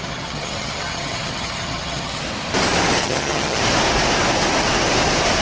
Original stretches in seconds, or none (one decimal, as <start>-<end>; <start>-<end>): 2.2-3.0; 3.6-5.4